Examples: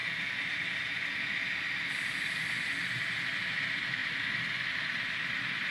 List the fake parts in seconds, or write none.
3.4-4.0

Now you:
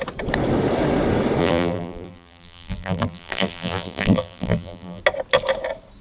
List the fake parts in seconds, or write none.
1.4-5.0

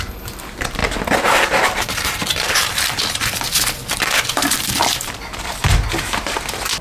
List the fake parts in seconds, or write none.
2.3-5.5

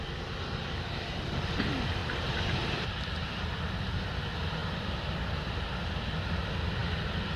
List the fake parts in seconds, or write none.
2.0-3.4; 4.6-6.1; 6.8-7.4

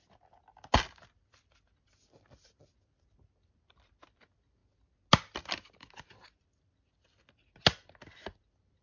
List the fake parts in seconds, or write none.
0.0-4.6; 5.4-8.8

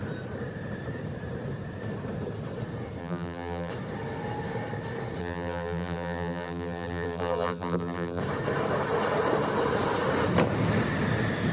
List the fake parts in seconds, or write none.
3.0-3.7; 5.2-8.2

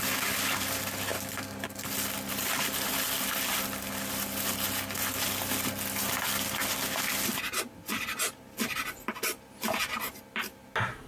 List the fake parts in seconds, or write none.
1.1-2.9

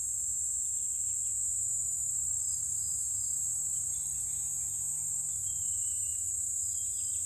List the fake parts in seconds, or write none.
1.4-2.4; 2.9-4.2